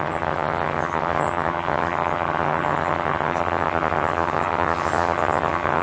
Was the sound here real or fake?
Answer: fake